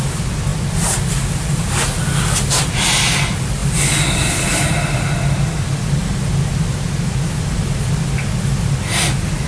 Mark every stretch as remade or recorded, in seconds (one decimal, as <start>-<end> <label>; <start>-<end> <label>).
0.0-9.5 recorded